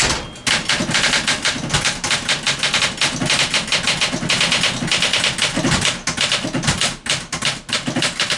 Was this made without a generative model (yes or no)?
yes